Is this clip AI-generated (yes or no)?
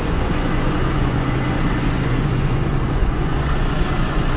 yes